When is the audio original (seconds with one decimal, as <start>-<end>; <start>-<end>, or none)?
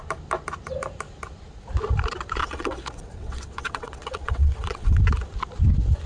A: 0.0-2.4; 5.0-6.1